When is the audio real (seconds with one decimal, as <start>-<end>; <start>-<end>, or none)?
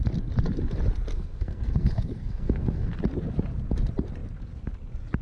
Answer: 0.0-1.1; 3.0-5.2